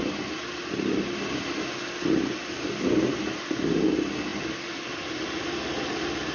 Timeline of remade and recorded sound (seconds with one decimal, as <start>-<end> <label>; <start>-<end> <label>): 0.0-6.3 recorded